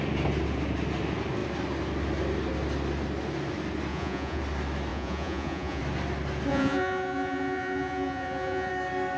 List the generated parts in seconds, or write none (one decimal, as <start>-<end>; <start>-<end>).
3.9-4.4; 4.9-5.8; 6.5-8.7